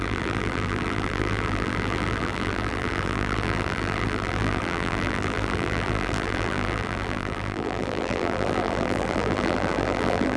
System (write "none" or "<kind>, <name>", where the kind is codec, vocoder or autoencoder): vocoder, BigVGAN v2